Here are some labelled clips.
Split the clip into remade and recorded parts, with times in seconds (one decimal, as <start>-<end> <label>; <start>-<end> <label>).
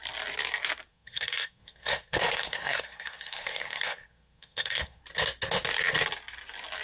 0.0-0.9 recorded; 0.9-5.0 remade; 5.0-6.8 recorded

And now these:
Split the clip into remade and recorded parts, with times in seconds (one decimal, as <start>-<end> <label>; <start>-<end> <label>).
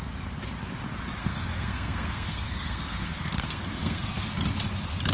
0.0-1.2 recorded; 1.2-4.3 remade; 4.3-5.1 recorded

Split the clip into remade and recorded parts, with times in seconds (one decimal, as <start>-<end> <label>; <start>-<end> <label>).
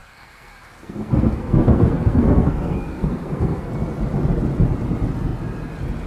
0.0-3.7 remade; 3.7-6.1 recorded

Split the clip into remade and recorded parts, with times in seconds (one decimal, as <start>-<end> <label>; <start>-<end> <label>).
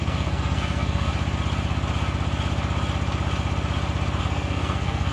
0.0-1.1 remade; 1.1-4.2 recorded; 4.2-5.1 remade